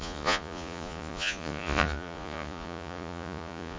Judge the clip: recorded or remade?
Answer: remade